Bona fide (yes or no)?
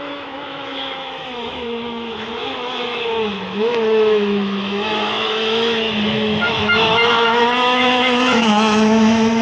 no